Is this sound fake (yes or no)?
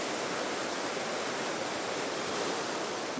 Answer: no